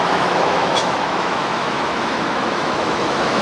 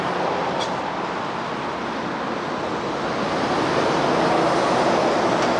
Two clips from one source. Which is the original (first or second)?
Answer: second